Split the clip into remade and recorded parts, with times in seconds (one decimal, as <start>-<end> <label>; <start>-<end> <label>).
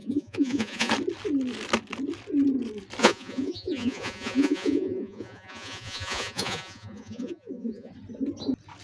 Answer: 0.0-0.9 remade; 0.9-3.0 recorded; 3.0-7.9 remade; 7.9-8.8 recorded